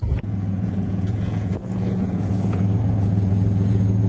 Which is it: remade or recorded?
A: remade